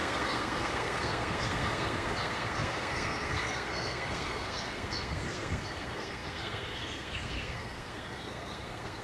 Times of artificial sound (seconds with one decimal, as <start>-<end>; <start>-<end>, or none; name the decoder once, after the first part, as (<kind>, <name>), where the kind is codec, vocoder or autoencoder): 0.0-9.0 (codec, SNAC)